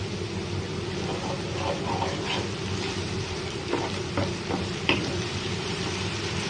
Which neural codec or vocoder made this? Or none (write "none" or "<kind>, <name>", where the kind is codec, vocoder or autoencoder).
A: vocoder, BigVGAN v2